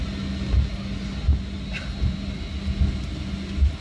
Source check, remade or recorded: recorded